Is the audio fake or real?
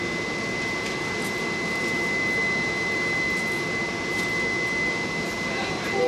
real